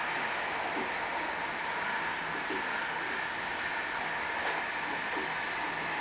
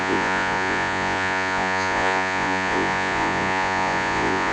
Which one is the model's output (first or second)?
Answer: second